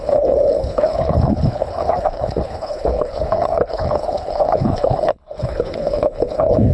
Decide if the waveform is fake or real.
fake